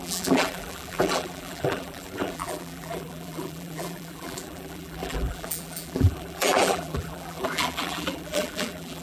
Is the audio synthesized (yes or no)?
yes